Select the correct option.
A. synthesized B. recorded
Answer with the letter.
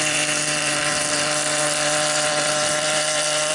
A